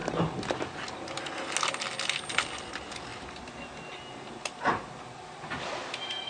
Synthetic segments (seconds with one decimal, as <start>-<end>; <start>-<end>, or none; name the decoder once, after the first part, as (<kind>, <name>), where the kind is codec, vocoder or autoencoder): none